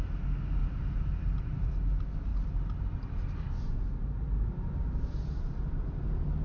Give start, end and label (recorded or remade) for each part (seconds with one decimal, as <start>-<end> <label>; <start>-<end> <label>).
0.0-0.6 recorded; 0.6-1.7 remade; 1.7-2.3 recorded; 2.3-5.9 remade; 5.9-6.4 recorded